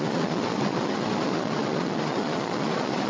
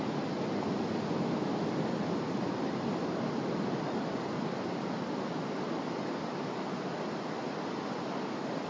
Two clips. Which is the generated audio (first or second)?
first